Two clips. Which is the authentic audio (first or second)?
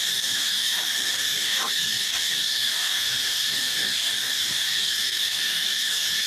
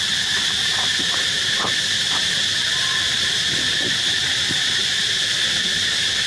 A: second